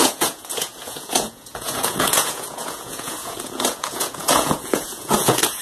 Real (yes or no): no